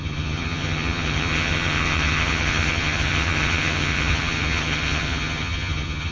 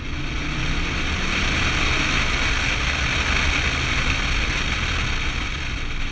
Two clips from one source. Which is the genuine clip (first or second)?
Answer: second